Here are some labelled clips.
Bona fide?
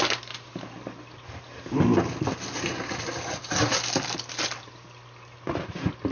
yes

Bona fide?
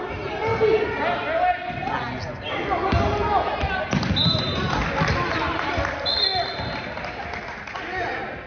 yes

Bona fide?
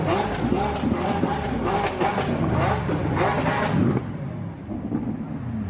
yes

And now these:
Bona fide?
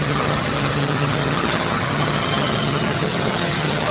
no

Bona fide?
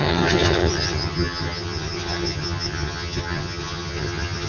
no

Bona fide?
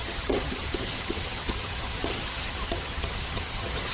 no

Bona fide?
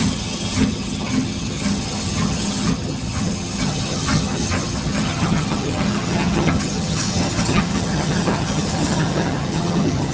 no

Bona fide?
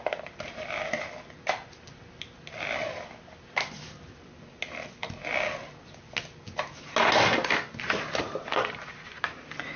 yes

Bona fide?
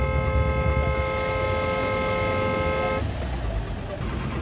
yes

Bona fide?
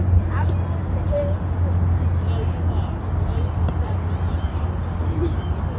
yes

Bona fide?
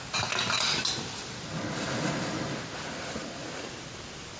yes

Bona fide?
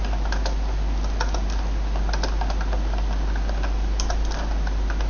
yes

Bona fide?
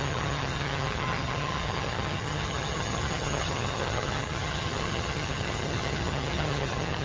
no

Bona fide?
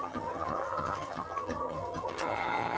no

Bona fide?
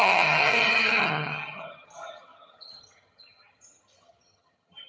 no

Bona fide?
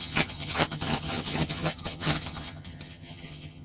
no